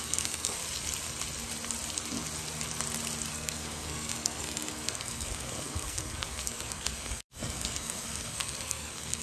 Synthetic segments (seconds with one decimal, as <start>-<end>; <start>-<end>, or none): 0.0-0.6; 3.3-9.2

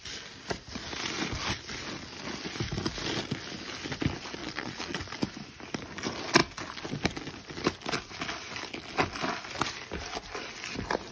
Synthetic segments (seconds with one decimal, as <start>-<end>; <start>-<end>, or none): 4.4-5.0